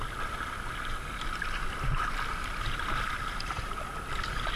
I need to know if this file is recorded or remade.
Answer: recorded